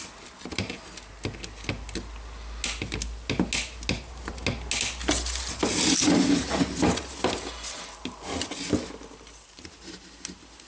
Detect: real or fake real